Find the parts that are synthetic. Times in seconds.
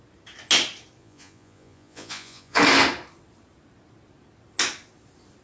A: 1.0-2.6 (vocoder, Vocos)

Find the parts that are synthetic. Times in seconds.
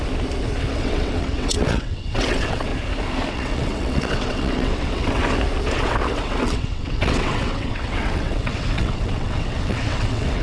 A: 0.7-2.7 (vocoder, WaveNeXt); 3.3-5.2; 5.8-10.4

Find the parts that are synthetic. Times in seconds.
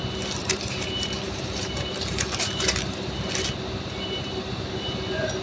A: 0.4-3.1 (vocoder, BigVGAN v2)